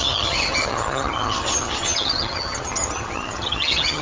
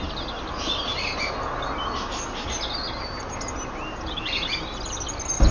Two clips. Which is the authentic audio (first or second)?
second